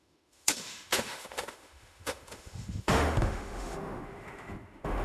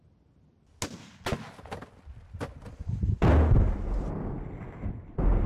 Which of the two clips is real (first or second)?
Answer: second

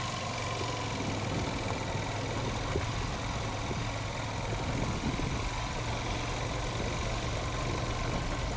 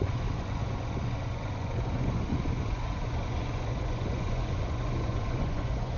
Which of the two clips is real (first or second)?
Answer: first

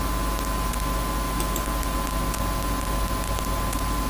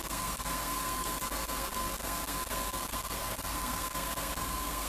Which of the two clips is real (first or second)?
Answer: first